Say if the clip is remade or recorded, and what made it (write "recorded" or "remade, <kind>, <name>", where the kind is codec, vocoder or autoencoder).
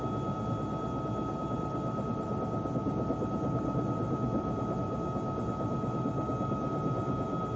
recorded